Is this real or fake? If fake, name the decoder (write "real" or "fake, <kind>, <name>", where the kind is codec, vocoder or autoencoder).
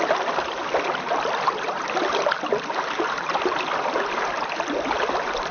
real